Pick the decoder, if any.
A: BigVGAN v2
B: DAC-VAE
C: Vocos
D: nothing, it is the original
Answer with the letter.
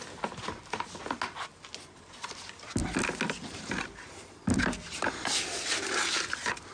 D